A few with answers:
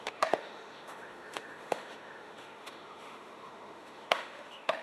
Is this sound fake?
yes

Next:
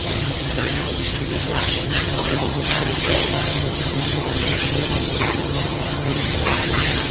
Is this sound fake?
yes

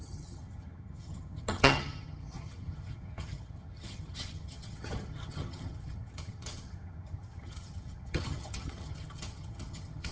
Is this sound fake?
yes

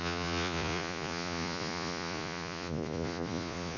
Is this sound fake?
yes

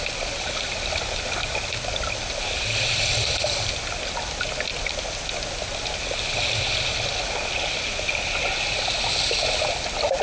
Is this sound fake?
no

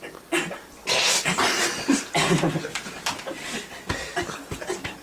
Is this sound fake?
yes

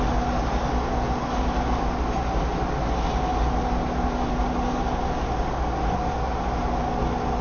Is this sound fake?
no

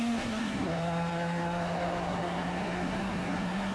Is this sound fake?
yes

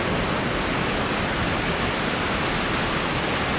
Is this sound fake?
no